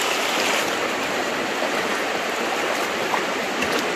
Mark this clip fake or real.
real